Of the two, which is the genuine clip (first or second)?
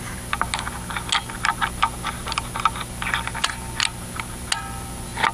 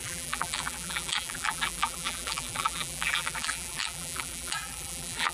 first